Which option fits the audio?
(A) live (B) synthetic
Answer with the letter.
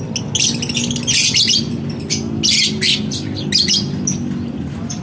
A